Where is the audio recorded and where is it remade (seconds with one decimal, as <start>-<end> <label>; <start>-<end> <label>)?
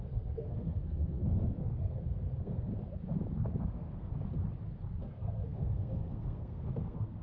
0.0-2.7 remade; 2.7-3.6 recorded; 3.6-4.1 remade; 4.1-5.0 recorded; 5.0-7.2 remade